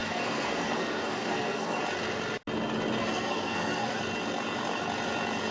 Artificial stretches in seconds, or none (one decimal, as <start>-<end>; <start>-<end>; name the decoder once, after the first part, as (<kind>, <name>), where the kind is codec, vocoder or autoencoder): 0.0-1.8 (codec, SNAC); 3.0-4.0